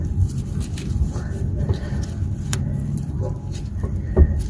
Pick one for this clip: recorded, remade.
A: remade